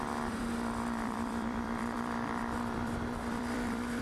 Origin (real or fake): fake